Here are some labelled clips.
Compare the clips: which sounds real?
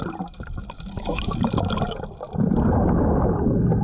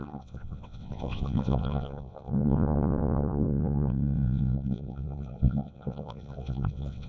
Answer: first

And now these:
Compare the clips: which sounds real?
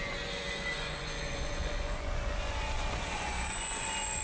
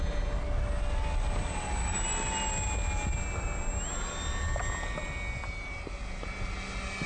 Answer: second